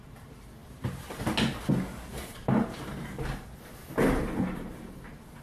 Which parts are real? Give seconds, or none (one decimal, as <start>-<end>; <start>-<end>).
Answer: 0.0-0.6; 1.2-2.1; 3.2-5.4